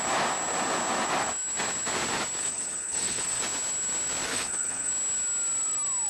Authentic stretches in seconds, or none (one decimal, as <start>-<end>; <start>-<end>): 0.0-2.4; 3.4-4.3; 4.9-6.1